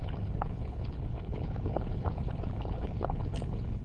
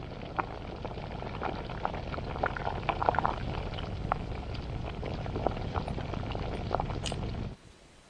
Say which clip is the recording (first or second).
second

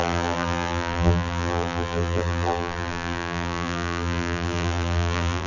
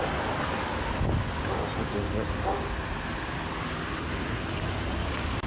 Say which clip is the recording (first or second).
second